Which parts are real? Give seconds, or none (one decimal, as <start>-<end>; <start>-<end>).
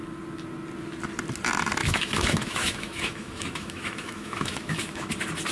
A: 0.0-1.8; 5.1-5.5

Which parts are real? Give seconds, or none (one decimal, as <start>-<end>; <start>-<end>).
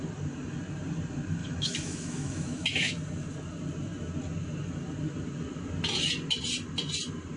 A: 0.0-1.4; 2.9-7.4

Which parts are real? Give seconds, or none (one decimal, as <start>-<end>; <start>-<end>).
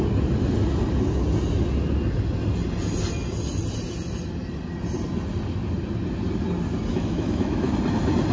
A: 0.0-6.9; 7.7-8.3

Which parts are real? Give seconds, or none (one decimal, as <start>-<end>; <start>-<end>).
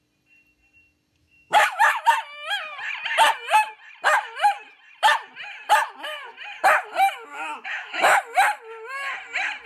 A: 0.0-1.2; 2.1-7.3; 8.2-9.7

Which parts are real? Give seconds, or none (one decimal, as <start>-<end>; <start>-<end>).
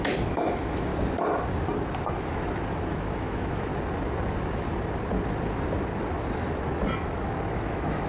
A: 0.9-2.9; 3.7-7.5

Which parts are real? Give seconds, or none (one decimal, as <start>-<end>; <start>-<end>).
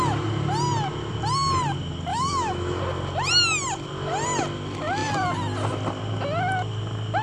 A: 0.0-2.1; 2.8-7.2